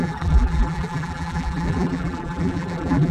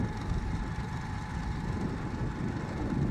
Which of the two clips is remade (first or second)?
first